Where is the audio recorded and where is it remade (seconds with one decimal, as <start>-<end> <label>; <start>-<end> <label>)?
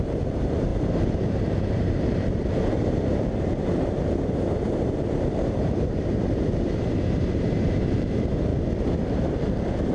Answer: 0.0-8.5 remade; 8.5-9.3 recorded; 9.3-9.9 remade